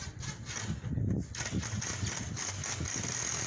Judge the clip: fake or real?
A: real